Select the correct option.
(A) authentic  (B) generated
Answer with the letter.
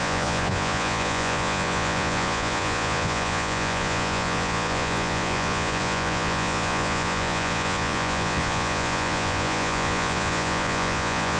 B